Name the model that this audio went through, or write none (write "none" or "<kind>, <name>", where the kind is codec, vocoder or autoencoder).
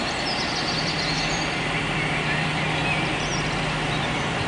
none